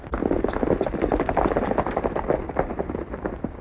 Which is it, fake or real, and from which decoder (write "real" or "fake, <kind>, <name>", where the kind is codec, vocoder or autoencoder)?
real